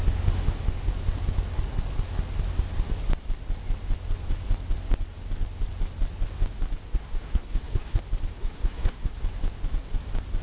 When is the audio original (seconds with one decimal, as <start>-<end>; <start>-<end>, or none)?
0.0-6.9; 8.0-8.4; 9.2-10.4